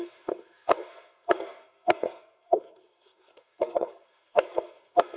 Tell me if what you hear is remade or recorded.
remade